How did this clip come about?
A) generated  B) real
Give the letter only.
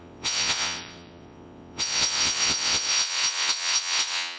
A